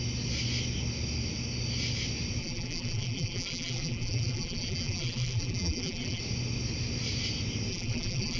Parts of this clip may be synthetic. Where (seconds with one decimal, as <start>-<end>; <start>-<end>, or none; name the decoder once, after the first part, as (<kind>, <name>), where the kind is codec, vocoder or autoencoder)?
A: 2.4-6.2 (vocoder, BigVGAN v2); 7.7-8.4